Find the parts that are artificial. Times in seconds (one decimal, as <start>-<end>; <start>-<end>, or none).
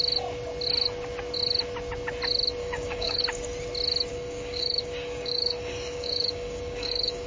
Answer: 2.6-3.2; 4.1-7.3